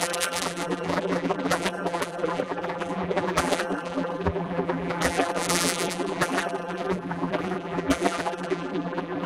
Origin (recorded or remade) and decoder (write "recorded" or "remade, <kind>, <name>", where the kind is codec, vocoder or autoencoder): remade, vocoder, BigVGAN v2